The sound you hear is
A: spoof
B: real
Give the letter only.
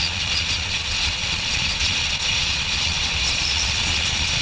A